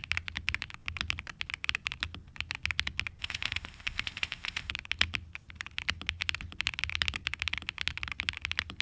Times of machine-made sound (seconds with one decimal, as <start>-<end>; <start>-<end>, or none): 3.2-4.7